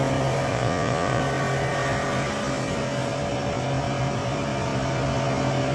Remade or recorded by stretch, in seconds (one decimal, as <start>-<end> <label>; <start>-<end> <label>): 0.0-0.5 recorded; 0.5-1.2 remade; 1.2-5.7 recorded